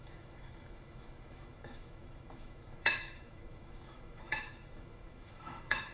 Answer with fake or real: fake